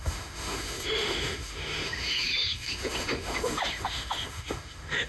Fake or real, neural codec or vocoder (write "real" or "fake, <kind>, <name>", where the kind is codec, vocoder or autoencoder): fake, autoencoder, DAC-VAE